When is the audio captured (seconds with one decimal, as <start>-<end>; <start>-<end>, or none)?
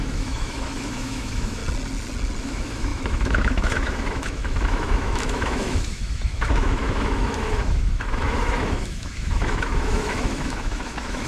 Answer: 1.6-2.4